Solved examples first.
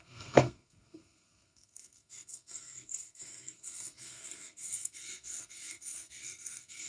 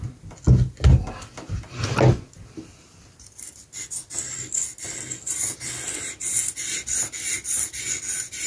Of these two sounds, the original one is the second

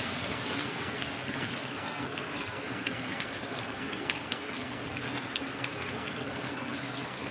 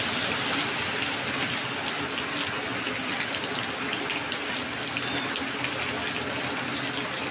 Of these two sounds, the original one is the second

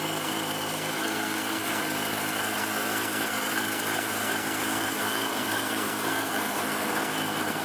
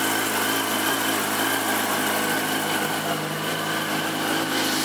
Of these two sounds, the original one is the second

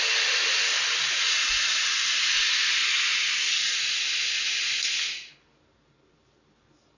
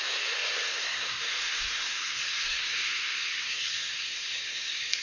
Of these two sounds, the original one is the first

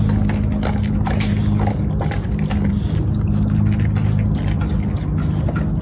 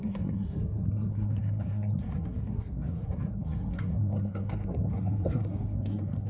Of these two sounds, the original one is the first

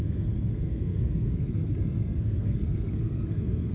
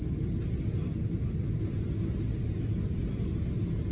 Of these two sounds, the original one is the second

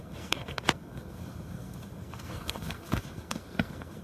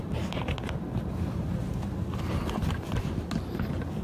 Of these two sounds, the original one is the second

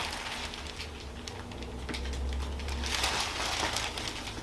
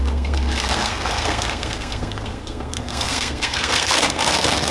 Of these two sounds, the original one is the first